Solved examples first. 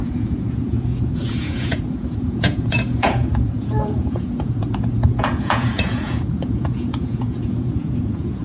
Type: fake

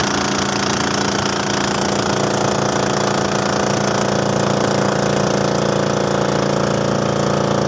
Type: real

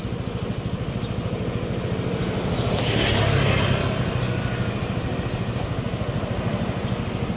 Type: real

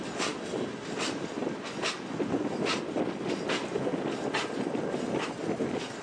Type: real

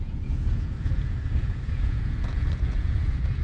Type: fake